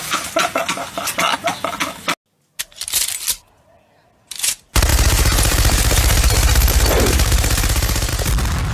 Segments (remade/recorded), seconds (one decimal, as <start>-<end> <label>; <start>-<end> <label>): 0.0-4.9 recorded; 4.9-8.1 remade; 8.1-8.7 recorded